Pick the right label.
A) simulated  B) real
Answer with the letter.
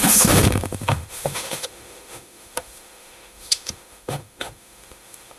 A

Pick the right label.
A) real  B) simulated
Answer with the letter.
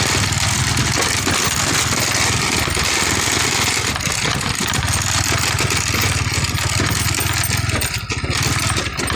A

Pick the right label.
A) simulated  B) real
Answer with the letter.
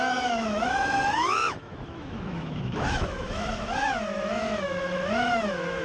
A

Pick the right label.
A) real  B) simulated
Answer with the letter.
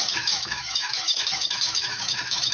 B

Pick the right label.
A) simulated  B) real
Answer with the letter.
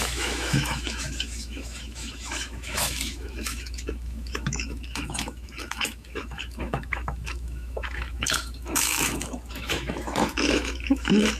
A